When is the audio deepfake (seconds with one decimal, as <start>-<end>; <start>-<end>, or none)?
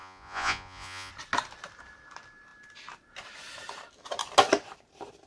0.0-1.1